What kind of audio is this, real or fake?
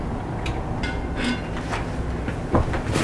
real